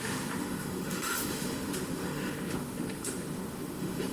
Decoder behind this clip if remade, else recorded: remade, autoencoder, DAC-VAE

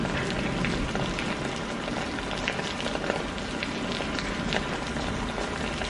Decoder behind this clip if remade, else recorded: recorded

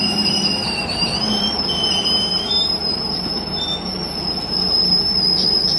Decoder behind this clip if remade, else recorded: recorded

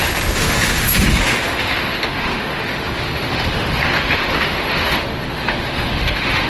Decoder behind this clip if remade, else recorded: remade, autoencoder, DAC-VAE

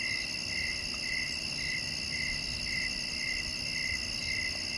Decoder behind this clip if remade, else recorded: recorded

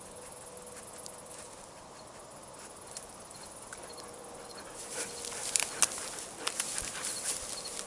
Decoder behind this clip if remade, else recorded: recorded